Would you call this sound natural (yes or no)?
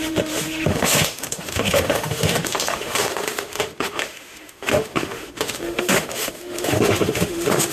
no